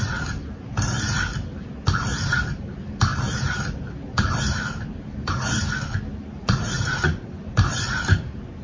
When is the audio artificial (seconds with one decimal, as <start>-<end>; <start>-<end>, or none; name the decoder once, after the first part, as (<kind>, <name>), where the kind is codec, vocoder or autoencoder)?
6.4-7.3 (vocoder, Vocos)